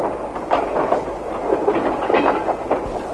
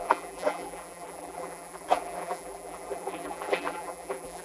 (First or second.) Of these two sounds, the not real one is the second